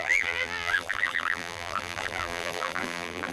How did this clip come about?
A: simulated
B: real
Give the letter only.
A